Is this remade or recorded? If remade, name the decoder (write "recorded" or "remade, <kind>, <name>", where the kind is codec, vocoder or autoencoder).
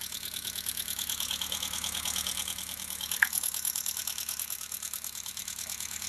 remade, autoencoder, DAC-VAE